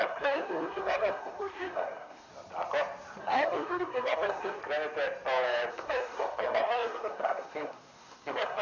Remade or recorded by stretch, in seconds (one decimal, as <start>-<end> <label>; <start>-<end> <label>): 0.0-2.3 remade; 2.3-3.2 recorded; 3.2-4.6 remade; 4.6-5.7 recorded; 5.7-8.6 remade